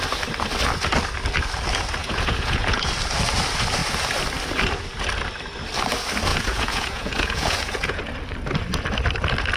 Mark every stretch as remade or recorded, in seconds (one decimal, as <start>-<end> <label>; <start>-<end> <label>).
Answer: 0.0-2.0 recorded; 2.0-2.9 remade; 2.9-6.3 recorded; 6.3-8.0 remade; 8.0-9.6 recorded